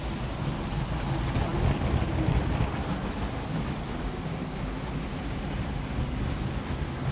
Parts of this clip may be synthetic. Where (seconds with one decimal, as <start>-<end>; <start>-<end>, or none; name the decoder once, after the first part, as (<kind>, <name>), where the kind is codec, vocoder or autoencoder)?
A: none